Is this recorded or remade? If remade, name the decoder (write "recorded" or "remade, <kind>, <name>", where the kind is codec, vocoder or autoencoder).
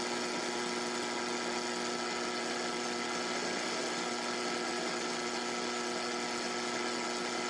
recorded